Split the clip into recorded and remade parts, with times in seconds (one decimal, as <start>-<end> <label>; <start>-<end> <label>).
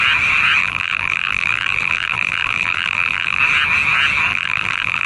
0.0-0.6 recorded; 0.6-3.4 remade; 3.4-4.3 recorded; 4.3-5.1 remade